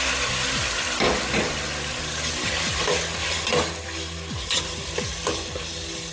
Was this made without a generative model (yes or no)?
yes